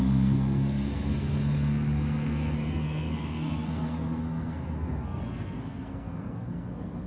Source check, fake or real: fake